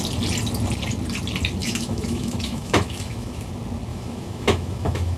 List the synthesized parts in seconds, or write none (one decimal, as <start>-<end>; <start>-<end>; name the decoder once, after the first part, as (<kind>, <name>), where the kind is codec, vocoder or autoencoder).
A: 1.6-3.5 (autoencoder, DAC-VAE); 3.9-5.2

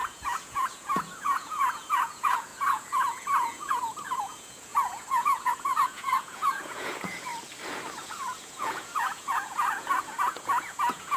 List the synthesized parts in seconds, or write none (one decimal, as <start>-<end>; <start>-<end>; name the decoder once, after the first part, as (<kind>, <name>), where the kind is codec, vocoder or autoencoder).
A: 0.0-7.3 (vocoder, Vocos); 8.0-11.2

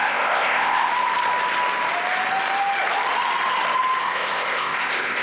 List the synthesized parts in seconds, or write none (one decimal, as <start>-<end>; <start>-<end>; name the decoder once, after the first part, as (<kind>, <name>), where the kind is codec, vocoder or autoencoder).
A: 0.0-0.9 (codec, ZipCodec); 4.0-5.2

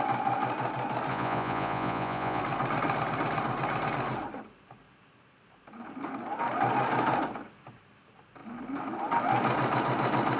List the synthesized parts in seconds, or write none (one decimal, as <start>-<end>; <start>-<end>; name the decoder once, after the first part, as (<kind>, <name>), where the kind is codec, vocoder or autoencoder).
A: 1.1-2.4 (vocoder, Vocos)

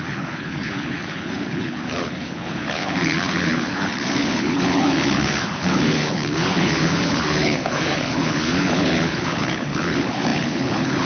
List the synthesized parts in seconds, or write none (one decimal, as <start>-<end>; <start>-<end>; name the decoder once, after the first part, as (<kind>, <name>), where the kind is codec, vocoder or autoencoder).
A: 0.0-11.1 (codec, HILCodec)

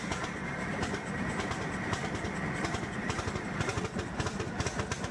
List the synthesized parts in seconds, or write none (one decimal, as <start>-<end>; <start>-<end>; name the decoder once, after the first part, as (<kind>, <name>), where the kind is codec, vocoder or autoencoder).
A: 0.0-2.0 (vocoder, BigVGAN v2); 2.9-3.7